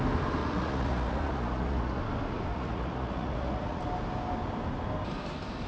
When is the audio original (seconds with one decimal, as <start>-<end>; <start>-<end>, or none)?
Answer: 0.0-0.4; 2.0-2.5; 3.8-5.7